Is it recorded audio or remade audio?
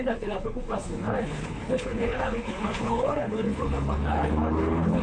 remade